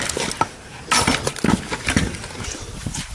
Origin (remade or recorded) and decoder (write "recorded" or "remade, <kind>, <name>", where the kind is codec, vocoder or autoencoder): recorded